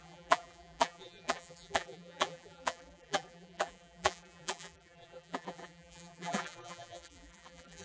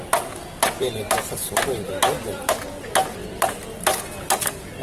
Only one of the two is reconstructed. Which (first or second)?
first